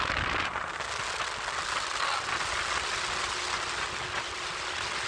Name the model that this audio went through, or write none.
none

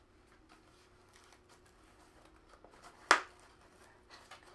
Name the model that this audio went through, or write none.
none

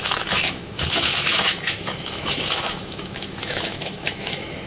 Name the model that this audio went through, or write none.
autoencoder, DAC-VAE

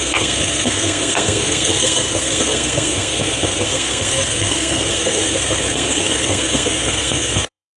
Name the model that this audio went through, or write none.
codec, SNAC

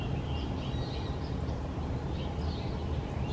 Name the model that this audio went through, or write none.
none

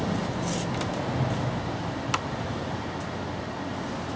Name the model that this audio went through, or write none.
none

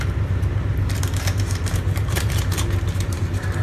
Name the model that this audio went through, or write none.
vocoder, BigVGAN v2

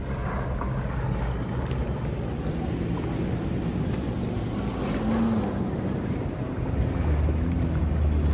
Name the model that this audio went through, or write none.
none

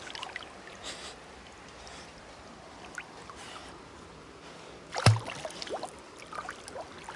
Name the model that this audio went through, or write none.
none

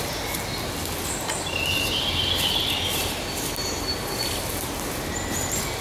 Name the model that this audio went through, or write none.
none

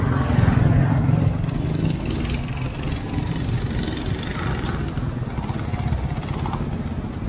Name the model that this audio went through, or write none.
none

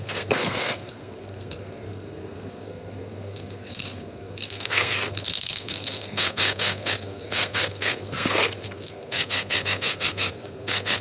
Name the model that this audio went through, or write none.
codec, SNAC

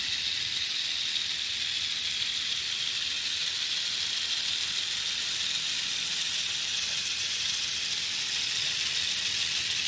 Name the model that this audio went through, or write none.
none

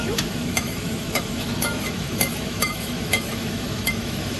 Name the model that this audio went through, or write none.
autoencoder, DAC-VAE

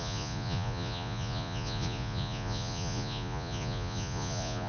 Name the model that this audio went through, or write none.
vocoder, Vocos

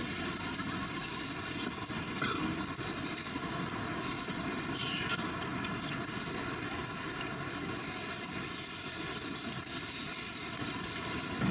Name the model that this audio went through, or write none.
none